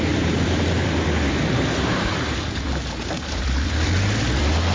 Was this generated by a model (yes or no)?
yes